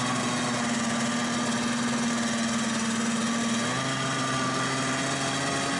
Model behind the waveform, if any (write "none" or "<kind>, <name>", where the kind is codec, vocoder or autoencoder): none